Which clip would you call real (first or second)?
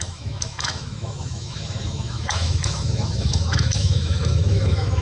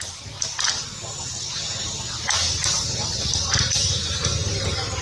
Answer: second